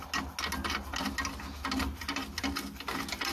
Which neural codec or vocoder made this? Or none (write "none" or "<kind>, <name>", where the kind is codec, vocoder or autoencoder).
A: none